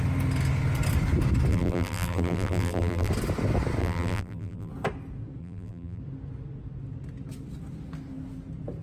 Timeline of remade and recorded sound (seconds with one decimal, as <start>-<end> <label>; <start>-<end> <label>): 0.0-1.5 recorded; 1.5-3.1 remade; 3.1-3.8 recorded; 3.8-4.7 remade; 4.7-5.4 recorded; 5.4-6.0 remade; 6.0-8.8 recorded